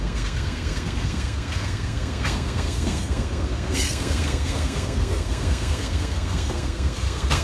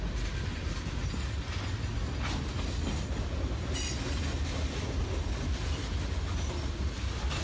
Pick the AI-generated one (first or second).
first